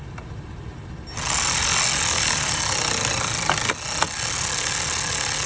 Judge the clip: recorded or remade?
recorded